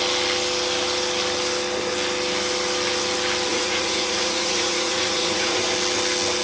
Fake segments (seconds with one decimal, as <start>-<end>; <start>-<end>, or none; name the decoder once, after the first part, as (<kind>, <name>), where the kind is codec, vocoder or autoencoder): 3.5-5.6 (vocoder, Vocos)